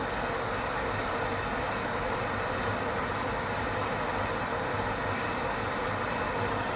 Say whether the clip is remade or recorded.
recorded